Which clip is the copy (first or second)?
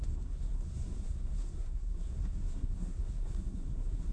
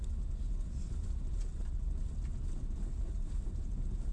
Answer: first